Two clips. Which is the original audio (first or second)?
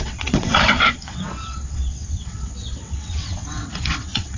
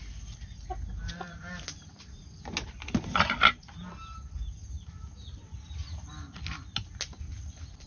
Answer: second